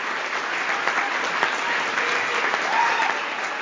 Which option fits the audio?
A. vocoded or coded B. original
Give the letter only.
B